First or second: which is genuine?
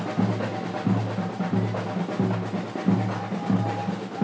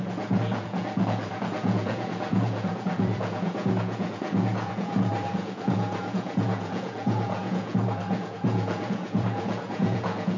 first